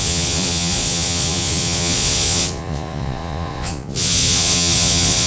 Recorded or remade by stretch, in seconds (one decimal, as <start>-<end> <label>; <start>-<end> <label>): 0.0-5.3 remade